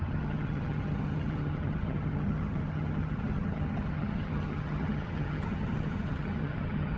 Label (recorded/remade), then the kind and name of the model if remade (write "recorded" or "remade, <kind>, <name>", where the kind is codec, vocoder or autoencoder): remade, vocoder, HiFi-GAN